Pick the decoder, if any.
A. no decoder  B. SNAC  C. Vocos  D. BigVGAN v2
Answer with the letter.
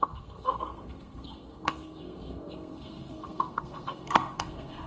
B